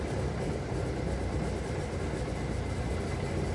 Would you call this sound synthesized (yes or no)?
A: no